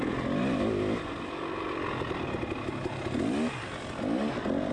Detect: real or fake real